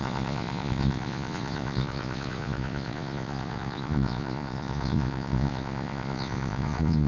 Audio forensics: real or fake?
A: fake